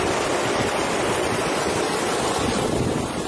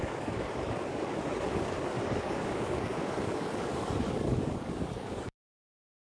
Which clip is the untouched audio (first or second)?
first